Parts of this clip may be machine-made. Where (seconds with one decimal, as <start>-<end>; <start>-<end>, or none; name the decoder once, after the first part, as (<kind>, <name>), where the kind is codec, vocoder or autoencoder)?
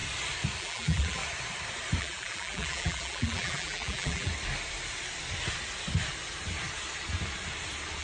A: 0.6-1.2 (vocoder, BigVGAN v2); 2.0-4.3